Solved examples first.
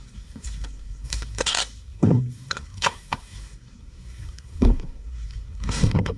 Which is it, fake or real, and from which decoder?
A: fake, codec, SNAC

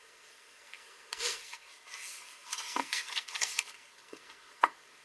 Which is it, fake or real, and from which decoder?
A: fake, codec, SNAC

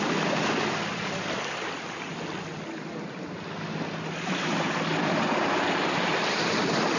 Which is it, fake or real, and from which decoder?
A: real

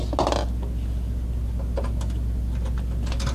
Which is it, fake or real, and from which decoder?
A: real